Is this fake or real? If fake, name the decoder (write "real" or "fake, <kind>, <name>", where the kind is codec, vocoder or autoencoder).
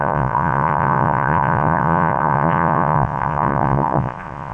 fake, vocoder, Vocos